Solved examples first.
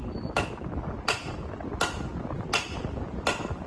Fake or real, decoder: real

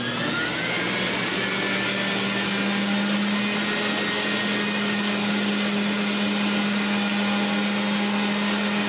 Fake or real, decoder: real